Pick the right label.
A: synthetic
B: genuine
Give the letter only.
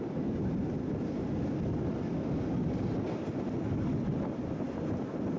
B